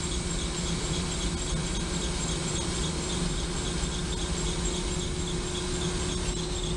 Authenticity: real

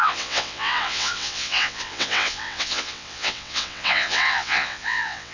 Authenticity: fake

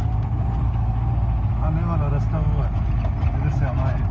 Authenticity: real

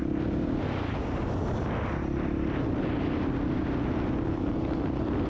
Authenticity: real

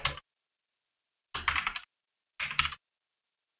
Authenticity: real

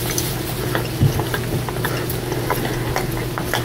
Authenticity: real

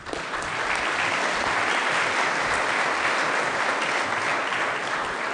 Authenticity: real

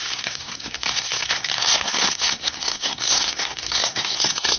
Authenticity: fake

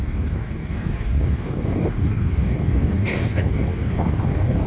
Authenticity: fake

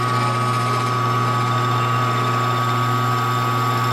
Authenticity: real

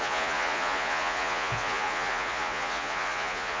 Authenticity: fake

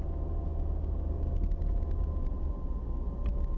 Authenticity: real